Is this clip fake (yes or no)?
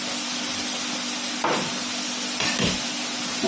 no